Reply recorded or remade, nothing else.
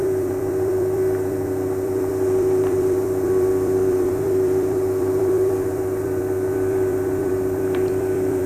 remade